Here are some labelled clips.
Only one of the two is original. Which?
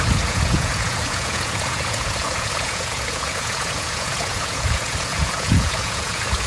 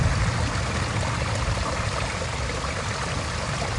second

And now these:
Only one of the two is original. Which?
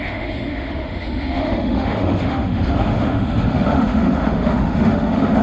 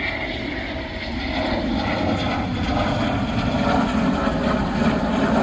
second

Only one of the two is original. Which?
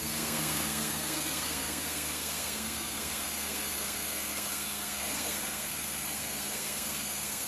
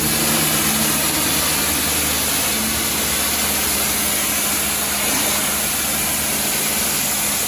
second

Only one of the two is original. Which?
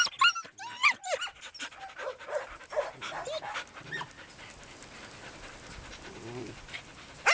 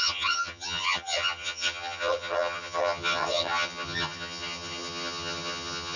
first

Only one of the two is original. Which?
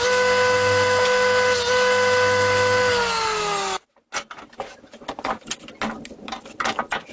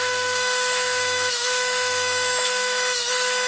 first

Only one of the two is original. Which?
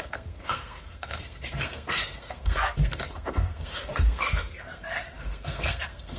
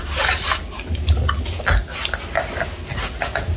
second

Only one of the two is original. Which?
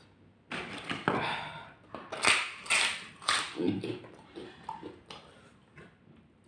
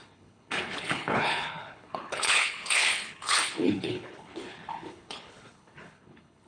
first